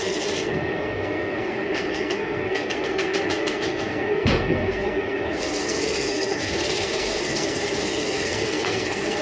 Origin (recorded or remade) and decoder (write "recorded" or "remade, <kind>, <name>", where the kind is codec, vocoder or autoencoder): remade, codec, SNAC